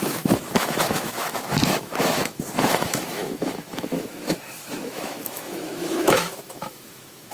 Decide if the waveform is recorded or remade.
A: remade